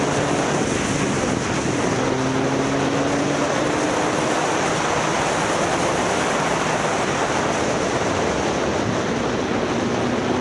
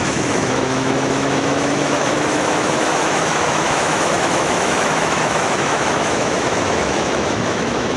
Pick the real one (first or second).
first